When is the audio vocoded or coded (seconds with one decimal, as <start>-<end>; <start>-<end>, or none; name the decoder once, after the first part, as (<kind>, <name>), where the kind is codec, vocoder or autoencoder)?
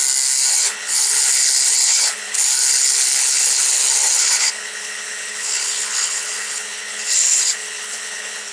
0.5-8.5 (codec, HILCodec)